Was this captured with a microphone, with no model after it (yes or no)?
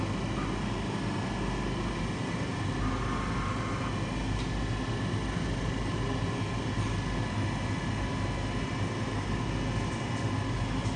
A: yes